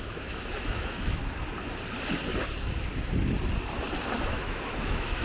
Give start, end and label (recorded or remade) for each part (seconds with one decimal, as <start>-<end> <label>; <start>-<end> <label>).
0.0-1.2 remade; 1.2-4.3 recorded; 4.3-5.2 remade

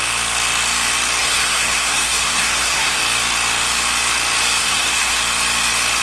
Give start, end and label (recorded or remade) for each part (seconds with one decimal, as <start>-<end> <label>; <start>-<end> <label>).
0.0-1.2 recorded; 1.2-3.0 remade; 3.0-4.6 recorded; 4.6-5.2 remade; 5.2-6.0 recorded

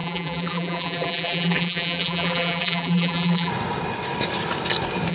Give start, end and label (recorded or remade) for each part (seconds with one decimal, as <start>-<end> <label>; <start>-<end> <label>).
0.0-3.5 remade; 3.5-5.1 recorded